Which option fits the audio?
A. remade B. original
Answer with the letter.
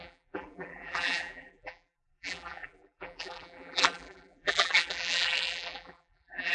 A